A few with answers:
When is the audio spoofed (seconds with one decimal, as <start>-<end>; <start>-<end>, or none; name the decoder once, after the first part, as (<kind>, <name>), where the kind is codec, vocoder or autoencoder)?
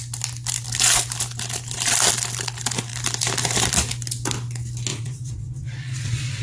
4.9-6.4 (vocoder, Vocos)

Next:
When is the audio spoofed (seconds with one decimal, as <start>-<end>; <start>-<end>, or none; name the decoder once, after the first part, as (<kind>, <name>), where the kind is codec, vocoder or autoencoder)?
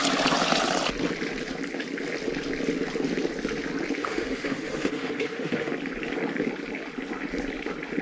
4.0-5.7 (autoencoder, DAC-VAE)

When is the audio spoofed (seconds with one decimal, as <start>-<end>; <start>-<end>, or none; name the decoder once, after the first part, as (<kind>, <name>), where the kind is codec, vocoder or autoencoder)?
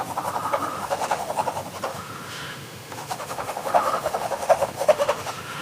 0.7-1.3 (autoencoder, DAC-VAE); 1.9-5.6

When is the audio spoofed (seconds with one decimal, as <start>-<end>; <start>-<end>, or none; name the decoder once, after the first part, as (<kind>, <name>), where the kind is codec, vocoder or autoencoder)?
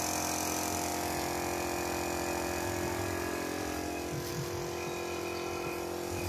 none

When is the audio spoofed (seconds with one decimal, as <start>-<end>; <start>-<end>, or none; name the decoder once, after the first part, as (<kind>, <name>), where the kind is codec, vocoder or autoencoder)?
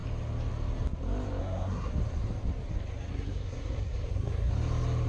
1.4-1.9 (codec, SNAC); 3.1-4.5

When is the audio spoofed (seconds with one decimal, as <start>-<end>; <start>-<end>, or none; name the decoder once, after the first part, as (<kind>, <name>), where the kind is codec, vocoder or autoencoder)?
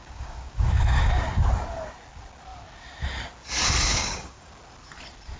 0.0-1.2 (codec, DAC); 3.9-4.5